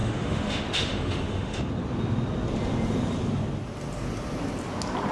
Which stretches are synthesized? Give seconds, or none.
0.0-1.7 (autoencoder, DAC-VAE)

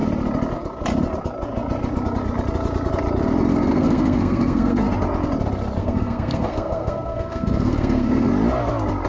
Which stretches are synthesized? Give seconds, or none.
3.5-4.8 (codec, SNAC); 5.8-8.3

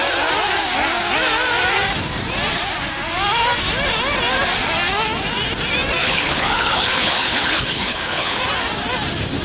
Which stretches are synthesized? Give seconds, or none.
6.0-8.4 (codec, HILCodec)

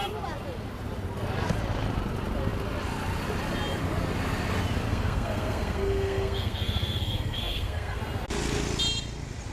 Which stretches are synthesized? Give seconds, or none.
4.9-8.0 (codec, SNAC)

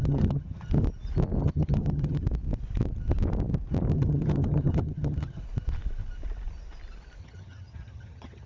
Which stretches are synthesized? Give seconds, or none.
0.0-0.7 (vocoder, HiFi-GAN); 1.4-2.2; 3.9-5.4; 7.2-8.5

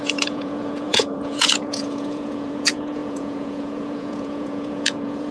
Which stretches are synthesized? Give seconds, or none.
0.0-5.3 (vocoder, Vocos)

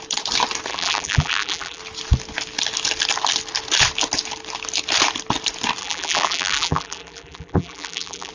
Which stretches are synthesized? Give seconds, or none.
0.7-1.8 (vocoder, BigVGAN v2); 5.8-8.3

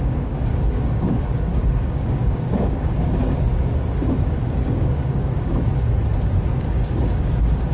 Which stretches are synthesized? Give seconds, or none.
0.0-5.7 (codec, DAC); 6.5-7.7